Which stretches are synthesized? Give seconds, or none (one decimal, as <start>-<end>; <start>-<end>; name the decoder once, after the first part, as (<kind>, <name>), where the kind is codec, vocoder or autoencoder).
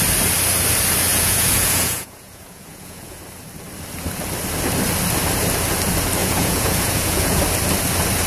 1.1-3.2 (vocoder, Vocos); 6.2-7.4